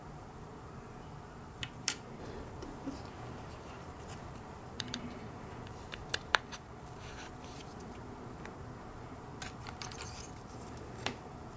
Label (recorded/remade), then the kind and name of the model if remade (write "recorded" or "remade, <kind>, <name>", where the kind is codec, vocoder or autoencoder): remade, vocoder, BigVGAN v2